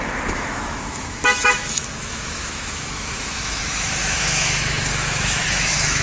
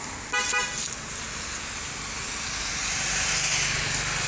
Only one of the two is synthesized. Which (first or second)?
first